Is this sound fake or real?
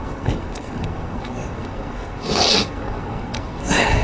fake